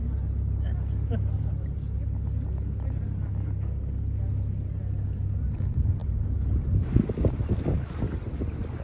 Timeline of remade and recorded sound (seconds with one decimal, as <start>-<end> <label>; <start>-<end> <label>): 0.0-8.8 recorded